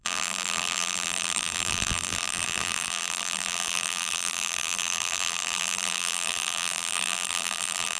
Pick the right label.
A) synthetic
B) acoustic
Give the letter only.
A